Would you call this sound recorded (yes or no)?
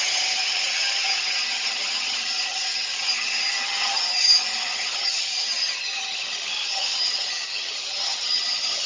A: no